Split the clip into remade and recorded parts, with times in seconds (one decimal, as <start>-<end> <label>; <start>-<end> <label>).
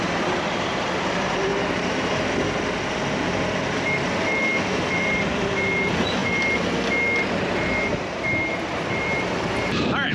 0.0-1.5 remade; 1.5-4.7 recorded; 4.7-6.2 remade; 6.2-7.3 recorded; 7.3-10.1 remade